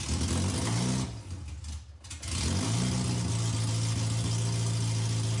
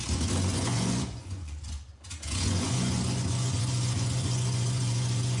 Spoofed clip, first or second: second